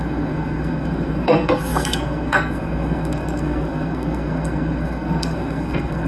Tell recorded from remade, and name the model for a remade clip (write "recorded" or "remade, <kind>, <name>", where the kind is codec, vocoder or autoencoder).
remade, codec, SNAC